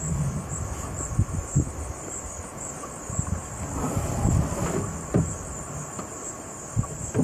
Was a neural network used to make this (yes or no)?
no